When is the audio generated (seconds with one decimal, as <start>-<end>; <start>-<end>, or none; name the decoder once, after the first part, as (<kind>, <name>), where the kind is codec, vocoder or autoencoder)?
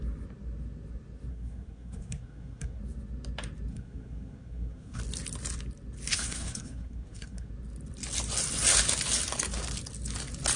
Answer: 1.3-2.8 (codec, SNAC); 3.7-5.0; 6.1-7.5